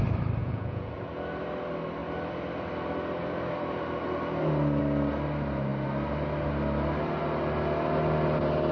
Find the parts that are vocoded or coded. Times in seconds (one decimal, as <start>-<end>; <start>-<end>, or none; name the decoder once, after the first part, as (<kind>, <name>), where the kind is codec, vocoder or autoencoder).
0.4-0.9 (vocoder, Vocos)